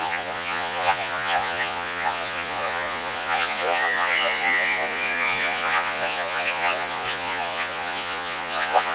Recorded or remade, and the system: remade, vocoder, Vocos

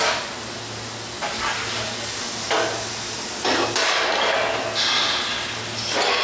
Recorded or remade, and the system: recorded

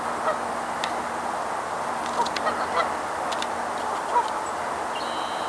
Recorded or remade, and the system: recorded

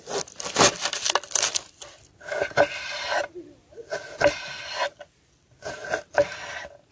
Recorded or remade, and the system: recorded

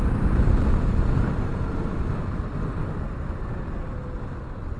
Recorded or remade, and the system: recorded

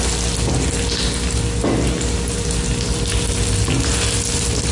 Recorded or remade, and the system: recorded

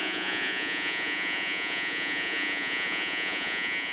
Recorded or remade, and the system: remade, vocoder, Vocos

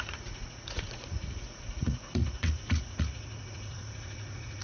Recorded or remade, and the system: remade, vocoder, Vocos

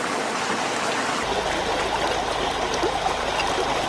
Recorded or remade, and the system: recorded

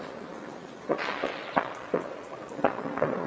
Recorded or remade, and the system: remade, vocoder, Vocos